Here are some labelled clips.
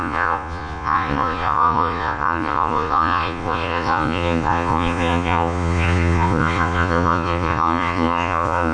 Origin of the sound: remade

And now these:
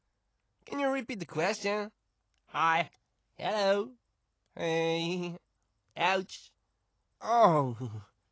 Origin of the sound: recorded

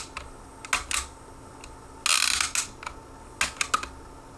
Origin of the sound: recorded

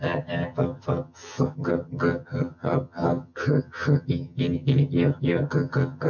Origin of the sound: remade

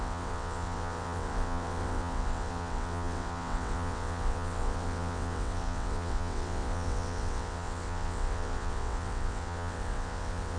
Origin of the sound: remade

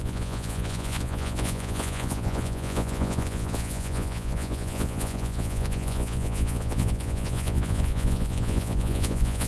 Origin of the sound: remade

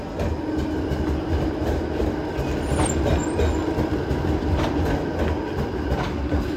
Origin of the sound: recorded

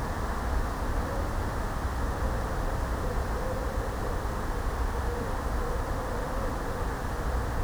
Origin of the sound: recorded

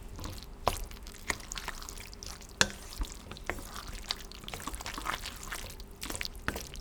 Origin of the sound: recorded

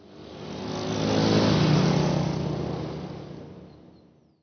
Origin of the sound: recorded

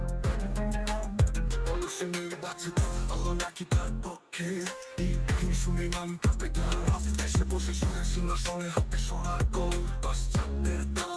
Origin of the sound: remade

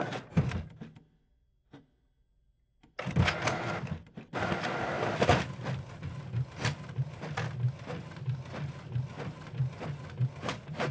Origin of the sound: recorded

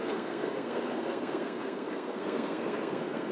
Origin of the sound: remade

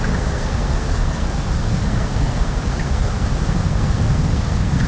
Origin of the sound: remade